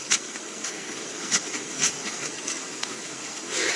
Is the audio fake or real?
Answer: fake